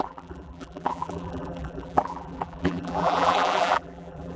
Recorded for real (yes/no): no